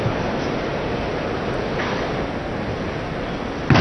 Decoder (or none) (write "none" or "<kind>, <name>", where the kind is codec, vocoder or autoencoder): none